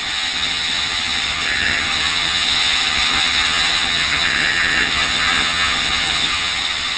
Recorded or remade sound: remade